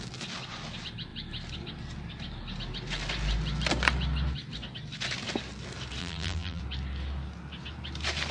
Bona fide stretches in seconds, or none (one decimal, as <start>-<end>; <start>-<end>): 0.0-6.0; 6.6-8.3